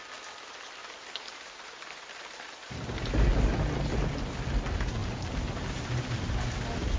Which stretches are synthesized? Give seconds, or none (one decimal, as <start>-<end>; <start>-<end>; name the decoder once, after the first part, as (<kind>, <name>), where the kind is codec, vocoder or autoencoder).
0.8-3.3 (vocoder, BigVGAN v2); 5.0-6.5